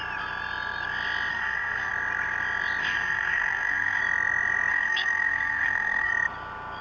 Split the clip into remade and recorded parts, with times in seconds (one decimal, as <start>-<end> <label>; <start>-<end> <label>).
0.0-1.3 recorded; 1.3-1.9 remade; 1.9-2.8 recorded; 2.8-4.0 remade; 4.0-4.7 recorded; 4.7-6.1 remade; 6.1-6.8 recorded

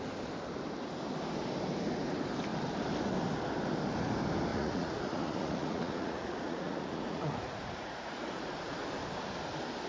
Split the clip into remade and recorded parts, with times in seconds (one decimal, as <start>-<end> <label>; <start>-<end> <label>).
0.0-4.5 recorded; 4.5-8.8 remade; 8.8-9.9 recorded

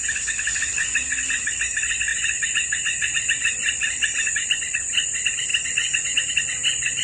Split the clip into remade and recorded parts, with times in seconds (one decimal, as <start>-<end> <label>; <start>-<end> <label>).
0.0-2.1 remade; 2.1-3.2 recorded; 3.2-5.5 remade; 5.5-6.3 recorded; 6.3-7.0 remade

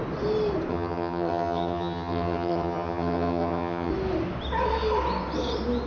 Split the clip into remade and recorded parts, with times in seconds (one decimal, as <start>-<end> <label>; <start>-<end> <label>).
0.0-0.7 recorded; 0.7-3.9 remade; 3.9-5.9 recorded